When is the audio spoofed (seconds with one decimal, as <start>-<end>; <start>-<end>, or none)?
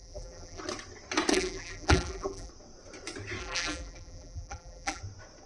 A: 0.0-0.6; 1.3-2.5; 3.4-5.0